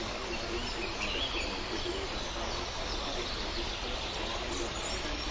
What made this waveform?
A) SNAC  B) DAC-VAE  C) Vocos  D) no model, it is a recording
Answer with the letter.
D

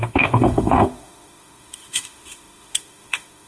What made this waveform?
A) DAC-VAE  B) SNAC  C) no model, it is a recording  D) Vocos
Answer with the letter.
A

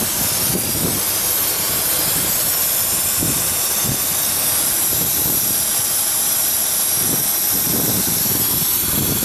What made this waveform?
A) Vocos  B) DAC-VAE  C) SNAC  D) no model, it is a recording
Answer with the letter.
D